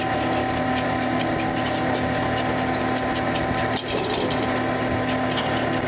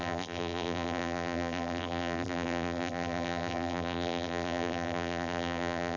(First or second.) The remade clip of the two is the second